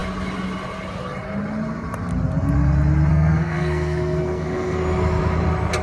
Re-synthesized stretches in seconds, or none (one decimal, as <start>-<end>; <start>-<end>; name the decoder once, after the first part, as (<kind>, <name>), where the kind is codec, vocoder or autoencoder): 3.1-4.8 (codec, SNAC)